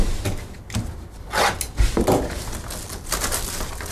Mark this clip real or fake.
real